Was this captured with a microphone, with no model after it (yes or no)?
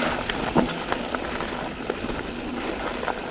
yes